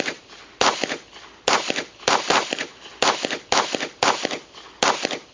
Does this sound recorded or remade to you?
recorded